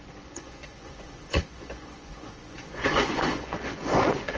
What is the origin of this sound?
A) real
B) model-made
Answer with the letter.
B